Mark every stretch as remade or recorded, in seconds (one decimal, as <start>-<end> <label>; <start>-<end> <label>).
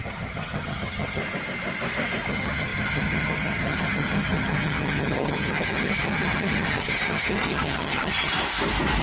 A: 0.0-1.2 remade; 1.2-2.3 recorded; 2.3-8.3 remade; 8.3-9.0 recorded